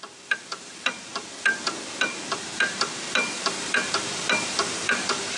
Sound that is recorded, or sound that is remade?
remade